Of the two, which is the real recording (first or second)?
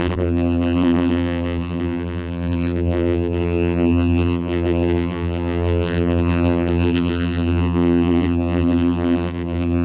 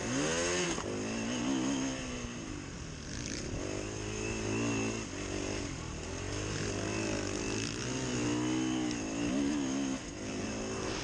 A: second